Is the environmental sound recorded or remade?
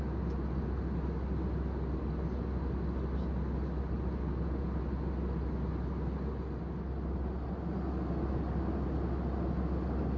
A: recorded